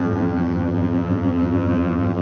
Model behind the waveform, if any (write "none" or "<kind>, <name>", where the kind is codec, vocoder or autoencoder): vocoder, BigVGAN v2